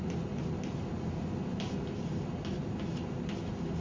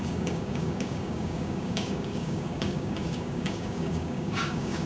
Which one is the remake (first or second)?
second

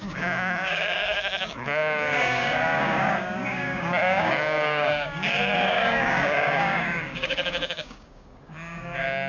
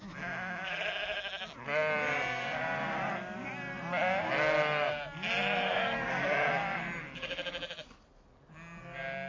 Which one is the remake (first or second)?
first